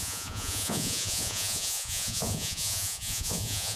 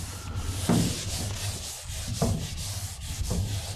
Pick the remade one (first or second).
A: first